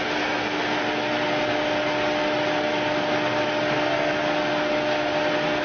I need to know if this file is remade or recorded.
recorded